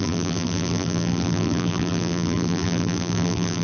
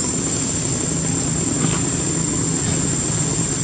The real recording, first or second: second